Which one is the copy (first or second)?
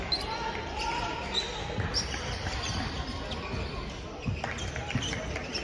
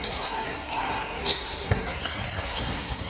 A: second